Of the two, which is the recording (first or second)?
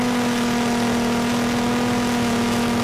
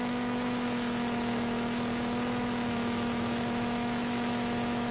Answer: first